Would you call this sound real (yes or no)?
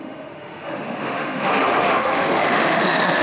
no